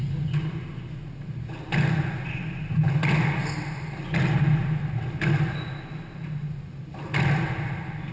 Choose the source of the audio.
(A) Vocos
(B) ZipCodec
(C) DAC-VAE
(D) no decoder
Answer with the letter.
D